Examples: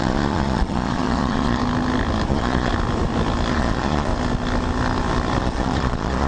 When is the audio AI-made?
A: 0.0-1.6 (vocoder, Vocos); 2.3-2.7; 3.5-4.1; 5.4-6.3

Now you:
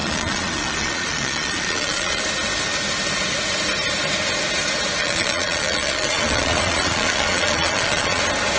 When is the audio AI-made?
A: 0.0-2.2 (vocoder, Vocos); 5.0-8.2

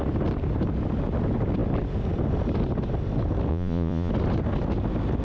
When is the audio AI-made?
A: 3.5-4.1 (vocoder, Vocos)